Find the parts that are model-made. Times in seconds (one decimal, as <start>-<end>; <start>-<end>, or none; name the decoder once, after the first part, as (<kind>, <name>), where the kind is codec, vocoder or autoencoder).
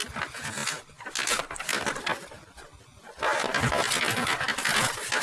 none